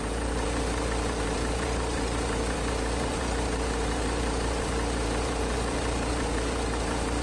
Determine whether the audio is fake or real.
fake